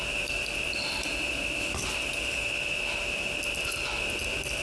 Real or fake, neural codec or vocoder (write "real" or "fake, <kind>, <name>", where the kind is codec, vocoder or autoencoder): real